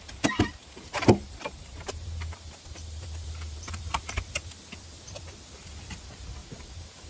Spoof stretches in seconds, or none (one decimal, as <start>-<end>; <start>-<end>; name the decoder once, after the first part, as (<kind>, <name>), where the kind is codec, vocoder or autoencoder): 0.6-4.3 (vocoder, BigVGAN v2); 6.4-7.1